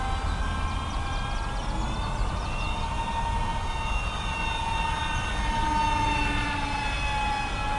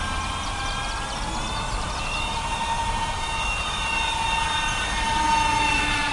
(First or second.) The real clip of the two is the first